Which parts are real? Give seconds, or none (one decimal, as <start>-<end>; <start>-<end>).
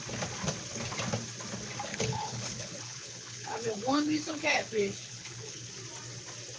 0.0-1.9; 5.7-6.6